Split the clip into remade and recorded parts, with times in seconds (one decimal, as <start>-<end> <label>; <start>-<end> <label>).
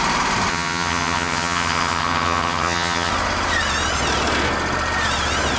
0.0-0.5 recorded; 0.5-3.1 remade; 3.1-5.6 recorded